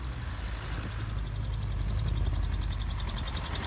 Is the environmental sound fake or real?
real